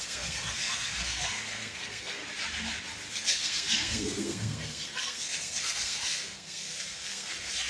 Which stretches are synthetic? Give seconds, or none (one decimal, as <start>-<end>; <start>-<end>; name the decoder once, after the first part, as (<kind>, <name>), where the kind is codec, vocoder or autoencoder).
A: 0.0-2.2 (codec, SNAC); 3.1-7.7